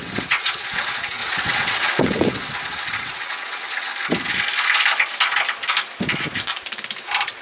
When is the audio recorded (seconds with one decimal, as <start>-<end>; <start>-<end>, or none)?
3.9-7.4